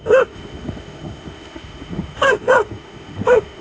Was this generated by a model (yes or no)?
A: yes